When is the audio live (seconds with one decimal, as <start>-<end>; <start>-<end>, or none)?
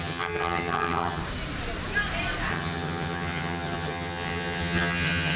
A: 1.2-2.5